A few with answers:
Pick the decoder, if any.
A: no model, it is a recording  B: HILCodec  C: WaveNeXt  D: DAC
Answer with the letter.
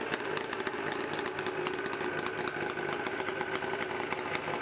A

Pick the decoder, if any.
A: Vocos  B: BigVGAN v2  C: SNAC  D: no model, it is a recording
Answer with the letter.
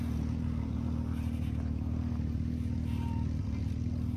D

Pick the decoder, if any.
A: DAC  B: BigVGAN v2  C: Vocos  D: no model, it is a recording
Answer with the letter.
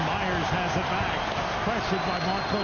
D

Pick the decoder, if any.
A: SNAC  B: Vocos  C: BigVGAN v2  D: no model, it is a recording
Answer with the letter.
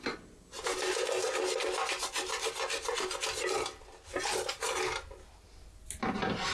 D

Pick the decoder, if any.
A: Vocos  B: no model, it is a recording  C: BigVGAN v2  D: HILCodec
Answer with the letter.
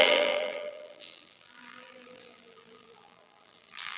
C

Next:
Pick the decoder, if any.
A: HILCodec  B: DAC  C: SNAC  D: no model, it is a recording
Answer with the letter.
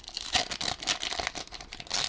D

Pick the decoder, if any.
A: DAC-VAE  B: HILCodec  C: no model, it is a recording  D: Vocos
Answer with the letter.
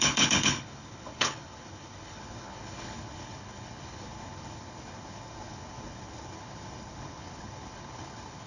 B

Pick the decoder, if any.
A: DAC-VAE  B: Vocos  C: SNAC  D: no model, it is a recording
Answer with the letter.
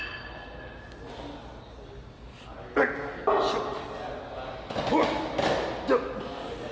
D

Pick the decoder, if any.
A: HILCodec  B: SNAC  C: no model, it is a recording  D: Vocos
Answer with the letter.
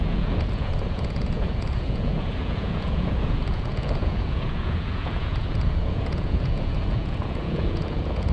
D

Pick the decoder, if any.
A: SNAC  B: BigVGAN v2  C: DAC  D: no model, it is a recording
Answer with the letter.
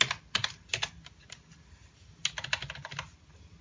D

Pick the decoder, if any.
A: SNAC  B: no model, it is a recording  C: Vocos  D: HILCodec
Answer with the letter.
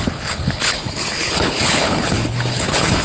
D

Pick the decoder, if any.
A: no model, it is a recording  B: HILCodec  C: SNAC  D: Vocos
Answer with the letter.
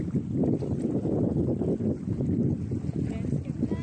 A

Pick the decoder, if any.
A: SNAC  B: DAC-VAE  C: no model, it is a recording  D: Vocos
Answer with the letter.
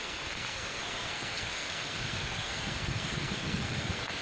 A